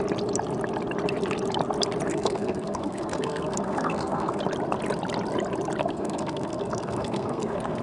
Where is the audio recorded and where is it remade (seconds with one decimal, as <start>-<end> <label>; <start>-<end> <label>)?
0.0-2.1 recorded; 2.1-4.4 remade; 4.4-5.8 recorded; 5.8-7.8 remade

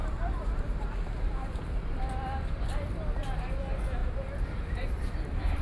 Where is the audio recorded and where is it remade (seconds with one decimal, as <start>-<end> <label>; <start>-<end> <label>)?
0.0-2.0 remade; 2.0-4.0 recorded; 4.0-5.6 remade